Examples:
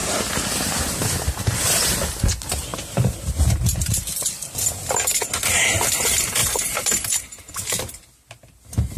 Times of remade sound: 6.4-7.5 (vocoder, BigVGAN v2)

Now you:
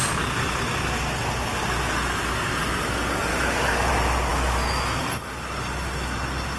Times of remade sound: 3.3-3.9 (autoencoder, DAC-VAE); 4.3-5.0